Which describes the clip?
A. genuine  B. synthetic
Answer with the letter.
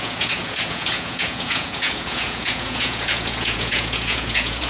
B